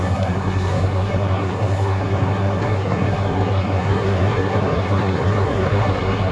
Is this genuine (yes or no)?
no